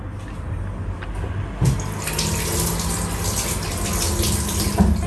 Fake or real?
real